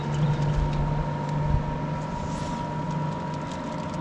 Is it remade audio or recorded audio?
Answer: recorded